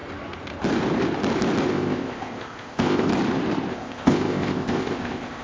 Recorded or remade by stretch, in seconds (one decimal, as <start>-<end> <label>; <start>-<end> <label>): 0.0-1.7 recorded; 1.7-3.1 remade; 3.1-3.7 recorded; 3.7-5.4 remade